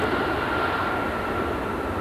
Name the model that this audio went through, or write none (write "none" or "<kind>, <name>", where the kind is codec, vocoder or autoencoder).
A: none